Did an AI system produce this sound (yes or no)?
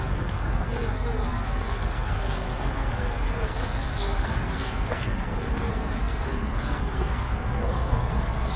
yes